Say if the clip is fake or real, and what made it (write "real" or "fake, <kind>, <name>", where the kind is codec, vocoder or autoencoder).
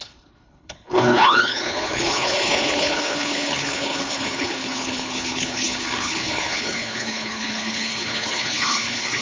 fake, codec, HILCodec